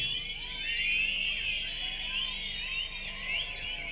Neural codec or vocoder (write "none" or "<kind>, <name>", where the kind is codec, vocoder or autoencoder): none